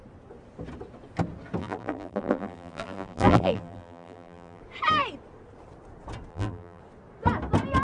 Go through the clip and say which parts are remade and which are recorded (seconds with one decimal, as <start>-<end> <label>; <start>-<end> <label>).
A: 0.0-1.6 recorded; 1.6-4.6 remade; 4.6-6.3 recorded; 6.3-6.8 remade; 6.8-7.8 recorded